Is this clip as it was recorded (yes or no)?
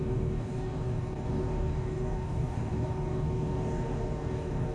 no